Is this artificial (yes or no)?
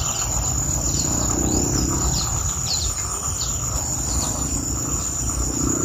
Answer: no